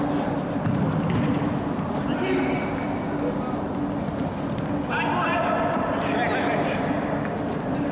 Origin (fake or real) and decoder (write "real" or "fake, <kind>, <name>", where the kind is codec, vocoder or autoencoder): real